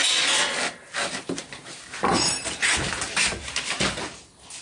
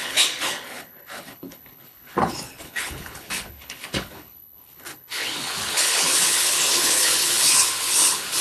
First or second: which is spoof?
second